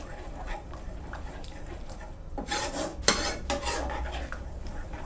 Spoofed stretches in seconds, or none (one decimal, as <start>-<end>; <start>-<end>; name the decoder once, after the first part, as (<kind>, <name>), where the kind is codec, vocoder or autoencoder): 0.0-2.9 (vocoder, BigVGAN v2); 4.3-5.1